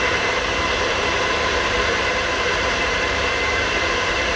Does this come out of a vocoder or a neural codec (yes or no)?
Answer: yes